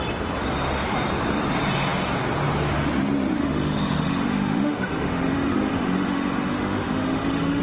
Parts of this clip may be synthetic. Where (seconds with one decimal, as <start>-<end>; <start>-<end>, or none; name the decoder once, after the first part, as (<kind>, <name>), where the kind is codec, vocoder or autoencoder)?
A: 3.4-7.6 (autoencoder, DAC-VAE)